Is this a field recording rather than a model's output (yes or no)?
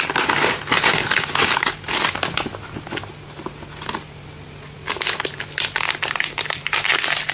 yes